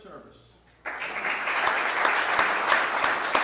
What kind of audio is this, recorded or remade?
recorded